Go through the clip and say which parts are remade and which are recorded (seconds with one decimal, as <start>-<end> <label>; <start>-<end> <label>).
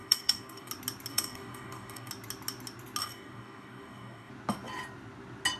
0.0-0.7 remade; 0.7-1.1 recorded; 1.1-2.1 remade; 2.1-3.0 recorded; 3.0-4.3 remade; 4.3-5.6 recorded